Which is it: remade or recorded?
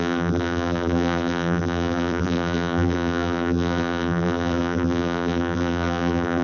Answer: remade